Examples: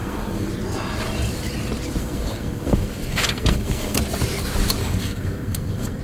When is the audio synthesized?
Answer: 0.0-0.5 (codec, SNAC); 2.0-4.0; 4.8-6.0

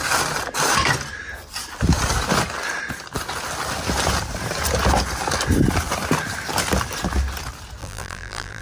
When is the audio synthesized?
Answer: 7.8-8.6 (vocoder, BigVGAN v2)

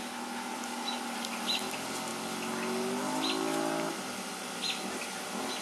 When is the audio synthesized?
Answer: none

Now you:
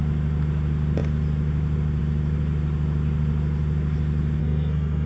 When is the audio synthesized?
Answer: 4.4-5.1 (codec, SNAC)

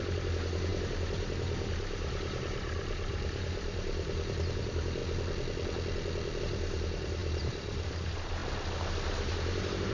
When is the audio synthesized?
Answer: 0.0-5.0 (vocoder, BigVGAN v2); 6.4-8.4; 9.3-9.9

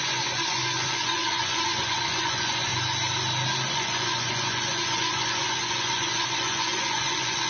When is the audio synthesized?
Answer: 0.0-2.7 (vocoder, Vocos); 3.7-7.5